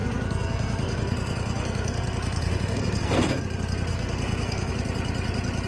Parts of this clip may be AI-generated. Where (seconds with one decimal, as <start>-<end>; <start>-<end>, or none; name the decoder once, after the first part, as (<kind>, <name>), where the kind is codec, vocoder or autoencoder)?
0.0-3.4 (codec, SNAC); 3.9-4.7